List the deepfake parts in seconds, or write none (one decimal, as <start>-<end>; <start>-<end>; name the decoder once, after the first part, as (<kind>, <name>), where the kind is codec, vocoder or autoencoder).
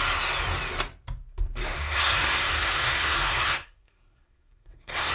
1.6-5.1 (codec, SNAC)